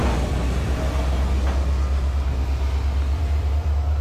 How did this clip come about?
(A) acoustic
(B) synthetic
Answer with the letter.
A